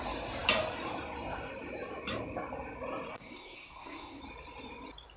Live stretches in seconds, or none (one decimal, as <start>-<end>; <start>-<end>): 0.0-3.1; 4.2-5.2

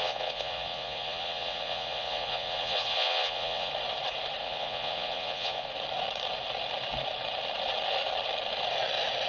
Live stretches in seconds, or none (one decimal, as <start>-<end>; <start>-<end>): 3.7-4.4; 5.7-9.3